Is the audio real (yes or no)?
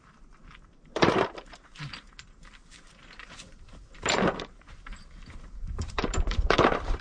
no